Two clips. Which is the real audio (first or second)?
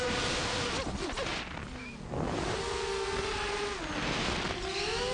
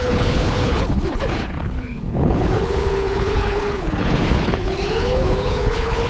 first